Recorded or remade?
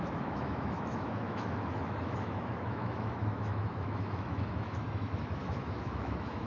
remade